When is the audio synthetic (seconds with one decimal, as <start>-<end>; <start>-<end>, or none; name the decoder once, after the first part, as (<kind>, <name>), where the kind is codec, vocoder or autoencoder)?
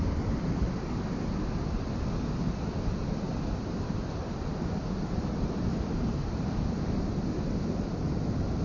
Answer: 5.7-6.8 (vocoder, BigVGAN v2)